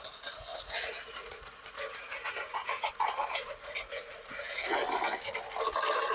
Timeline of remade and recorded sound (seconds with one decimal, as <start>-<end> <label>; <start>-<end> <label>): 0.0-4.8 remade; 4.8-6.1 recorded